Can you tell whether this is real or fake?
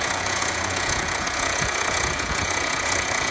fake